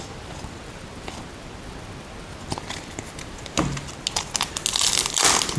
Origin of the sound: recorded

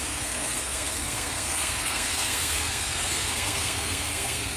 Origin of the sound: remade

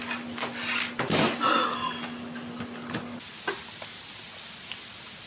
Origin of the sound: recorded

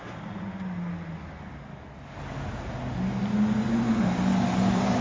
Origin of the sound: recorded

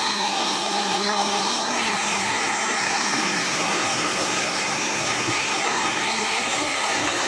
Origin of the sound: remade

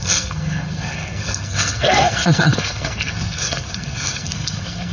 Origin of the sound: remade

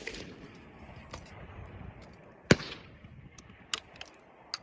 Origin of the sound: recorded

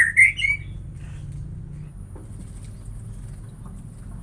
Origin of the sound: recorded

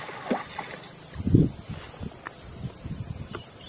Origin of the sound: recorded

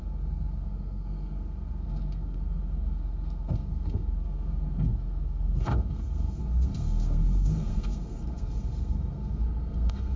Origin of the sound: remade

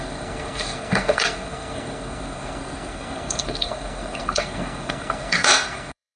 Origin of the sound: remade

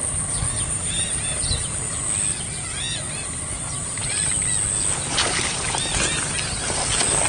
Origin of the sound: recorded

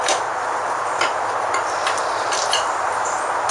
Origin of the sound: recorded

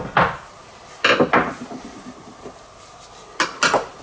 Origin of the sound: recorded